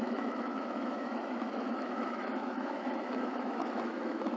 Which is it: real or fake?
fake